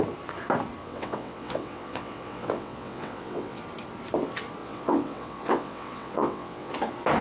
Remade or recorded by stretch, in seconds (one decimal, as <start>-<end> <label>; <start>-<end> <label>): 0.0-0.8 recorded; 0.8-3.6 remade; 3.6-4.6 recorded; 4.6-6.7 remade; 6.7-7.2 recorded